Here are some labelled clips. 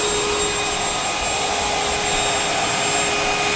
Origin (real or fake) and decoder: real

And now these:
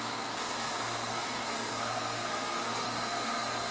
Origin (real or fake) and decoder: fake, codec, SNAC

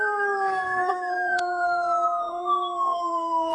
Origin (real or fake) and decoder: fake, codec, SNAC